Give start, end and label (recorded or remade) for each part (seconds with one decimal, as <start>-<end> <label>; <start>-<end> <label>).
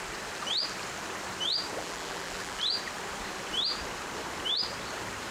0.0-1.8 recorded; 1.8-2.6 remade; 2.6-5.3 recorded